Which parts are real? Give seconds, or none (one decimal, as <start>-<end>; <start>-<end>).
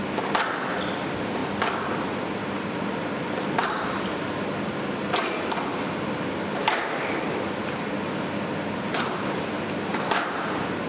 0.0-10.9